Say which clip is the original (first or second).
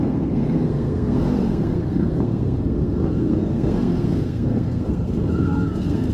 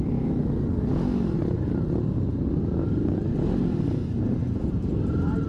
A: second